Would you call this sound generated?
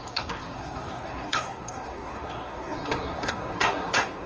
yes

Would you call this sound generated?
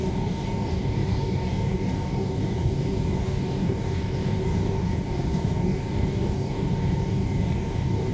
yes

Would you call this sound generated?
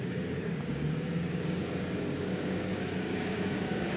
yes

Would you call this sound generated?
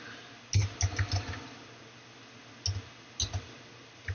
no